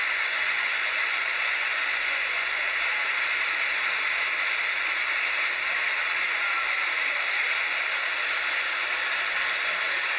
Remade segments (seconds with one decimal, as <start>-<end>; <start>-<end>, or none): 0.0-2.7